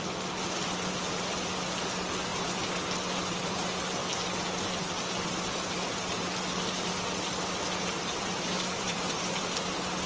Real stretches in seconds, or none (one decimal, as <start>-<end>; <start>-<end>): 0.0-8.0; 9.4-10.1